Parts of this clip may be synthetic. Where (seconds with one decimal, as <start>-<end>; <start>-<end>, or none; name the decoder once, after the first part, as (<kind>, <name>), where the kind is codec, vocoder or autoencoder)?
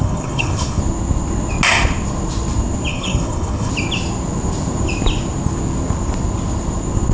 0.0-0.8 (codec, HILCodec); 2.9-3.7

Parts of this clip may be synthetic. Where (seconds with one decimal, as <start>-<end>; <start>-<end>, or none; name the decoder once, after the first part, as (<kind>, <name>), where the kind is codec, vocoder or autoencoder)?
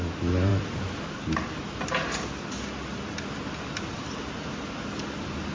none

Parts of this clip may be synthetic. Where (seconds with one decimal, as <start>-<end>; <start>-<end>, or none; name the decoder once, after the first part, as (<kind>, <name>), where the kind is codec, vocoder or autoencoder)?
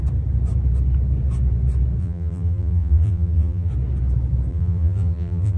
2.0-3.7 (vocoder, BigVGAN v2); 4.5-5.6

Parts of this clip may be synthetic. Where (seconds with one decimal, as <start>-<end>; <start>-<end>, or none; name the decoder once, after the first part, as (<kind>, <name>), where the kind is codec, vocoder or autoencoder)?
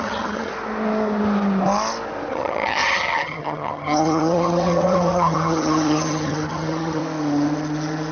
0.0-0.5 (vocoder, HiFi-GAN); 2.3-7.0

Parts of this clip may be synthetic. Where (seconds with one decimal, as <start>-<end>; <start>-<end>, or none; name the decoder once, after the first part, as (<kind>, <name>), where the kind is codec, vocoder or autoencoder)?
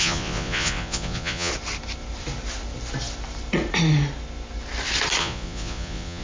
0.0-1.5 (vocoder, Vocos); 5.2-6.2